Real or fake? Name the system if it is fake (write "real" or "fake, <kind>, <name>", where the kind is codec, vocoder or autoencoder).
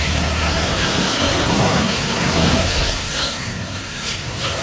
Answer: fake, codec, SNAC